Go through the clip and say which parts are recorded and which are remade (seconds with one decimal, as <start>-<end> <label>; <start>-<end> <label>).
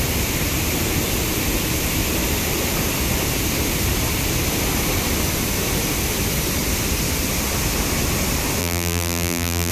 0.0-8.6 recorded; 8.6-9.7 remade